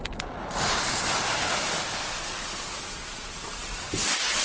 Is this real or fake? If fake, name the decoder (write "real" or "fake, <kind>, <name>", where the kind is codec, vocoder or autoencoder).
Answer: real